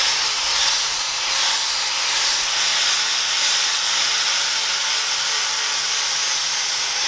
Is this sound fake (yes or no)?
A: no